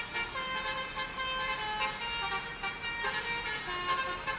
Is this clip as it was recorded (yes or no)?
yes